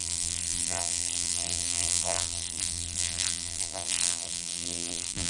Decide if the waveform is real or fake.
fake